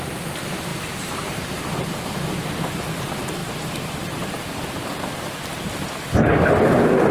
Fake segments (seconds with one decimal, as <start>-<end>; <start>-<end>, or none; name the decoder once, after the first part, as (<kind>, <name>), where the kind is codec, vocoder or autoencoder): 0.7-2.3 (vocoder, BigVGAN v2); 3.4-5.7